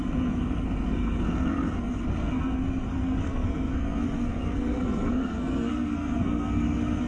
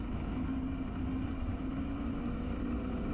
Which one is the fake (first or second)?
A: first